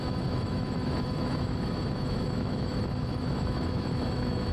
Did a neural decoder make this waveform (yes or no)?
yes